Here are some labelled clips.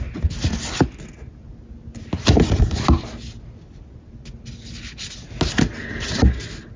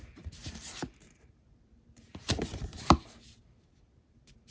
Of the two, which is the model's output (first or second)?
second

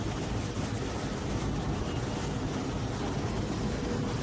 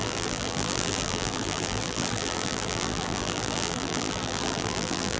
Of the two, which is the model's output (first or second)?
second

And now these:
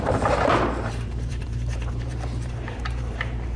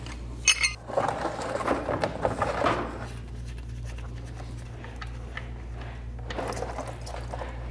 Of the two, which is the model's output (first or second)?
first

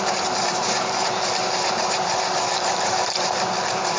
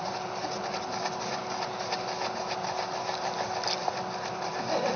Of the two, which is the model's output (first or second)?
first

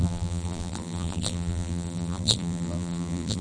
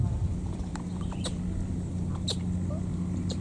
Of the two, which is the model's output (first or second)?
first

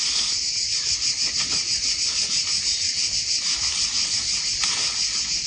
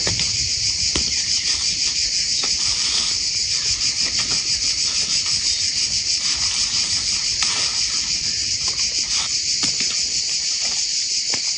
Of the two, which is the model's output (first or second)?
second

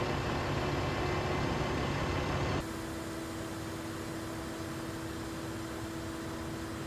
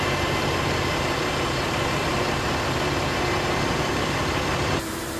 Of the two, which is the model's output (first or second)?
second